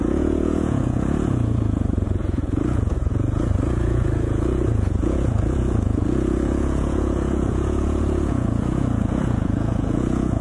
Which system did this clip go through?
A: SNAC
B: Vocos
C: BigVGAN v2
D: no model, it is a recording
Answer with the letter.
B